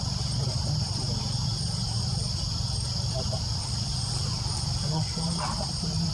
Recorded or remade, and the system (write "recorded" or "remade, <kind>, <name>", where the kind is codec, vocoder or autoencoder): remade, vocoder, BigVGAN v2